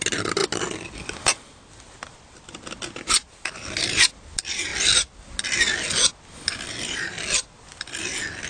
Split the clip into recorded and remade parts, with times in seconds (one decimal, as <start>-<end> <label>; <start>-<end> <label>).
0.0-8.5 recorded